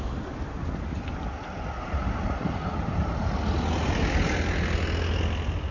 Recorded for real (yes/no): yes